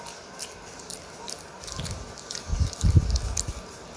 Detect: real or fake real